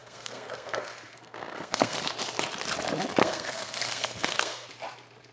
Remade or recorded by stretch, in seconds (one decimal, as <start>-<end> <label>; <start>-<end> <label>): 0.0-2.0 remade; 2.0-3.2 recorded; 3.2-4.7 remade; 4.7-5.3 recorded